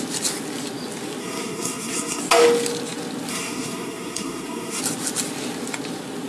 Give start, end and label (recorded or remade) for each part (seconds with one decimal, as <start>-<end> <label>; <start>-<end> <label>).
0.0-1.2 recorded; 1.2-2.2 remade; 2.2-3.3 recorded; 3.3-4.8 remade; 4.8-6.3 recorded